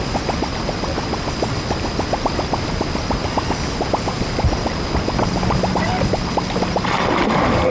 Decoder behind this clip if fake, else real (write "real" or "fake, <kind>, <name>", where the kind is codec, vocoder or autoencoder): real